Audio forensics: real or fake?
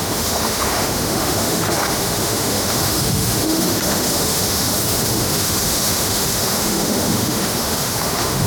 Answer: fake